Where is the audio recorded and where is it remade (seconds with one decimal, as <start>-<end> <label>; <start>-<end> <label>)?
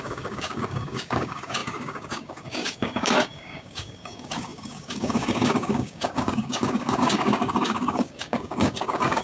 0.0-9.2 remade